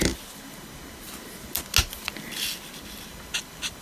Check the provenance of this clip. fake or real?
real